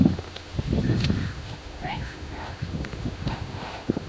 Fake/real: fake